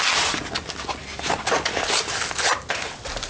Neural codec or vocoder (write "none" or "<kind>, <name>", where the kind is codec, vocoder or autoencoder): none